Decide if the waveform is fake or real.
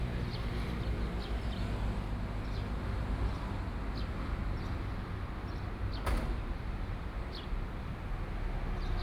real